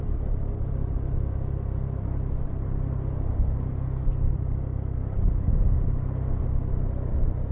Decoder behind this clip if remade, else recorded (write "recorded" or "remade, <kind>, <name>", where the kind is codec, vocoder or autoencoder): recorded